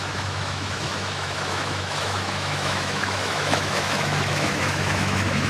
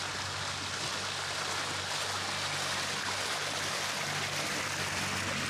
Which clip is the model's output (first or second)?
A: first